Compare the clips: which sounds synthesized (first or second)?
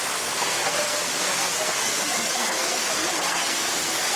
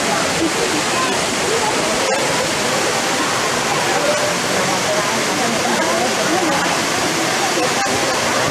first